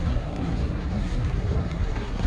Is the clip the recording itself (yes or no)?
no